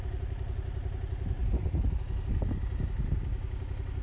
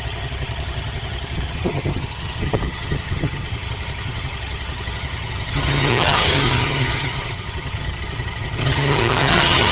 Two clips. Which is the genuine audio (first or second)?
first